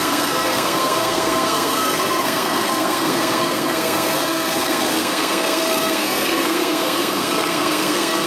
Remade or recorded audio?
remade